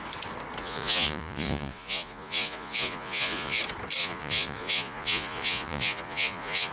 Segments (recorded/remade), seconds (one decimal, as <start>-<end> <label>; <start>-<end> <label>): 0.0-0.6 recorded; 0.6-3.6 remade; 3.6-4.0 recorded; 4.0-6.7 remade